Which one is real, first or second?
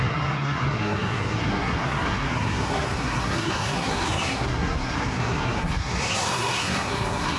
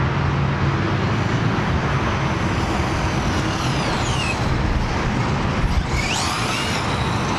second